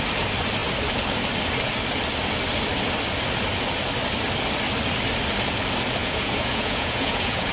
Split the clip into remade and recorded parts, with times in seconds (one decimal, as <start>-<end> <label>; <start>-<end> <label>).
0.0-6.0 recorded; 6.0-7.5 remade